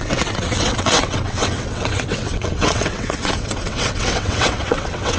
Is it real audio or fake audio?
fake